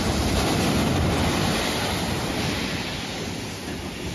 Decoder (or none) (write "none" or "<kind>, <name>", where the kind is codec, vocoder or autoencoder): none